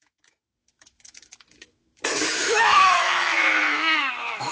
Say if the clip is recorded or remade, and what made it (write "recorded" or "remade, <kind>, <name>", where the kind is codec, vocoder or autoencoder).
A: remade, autoencoder, DAC-VAE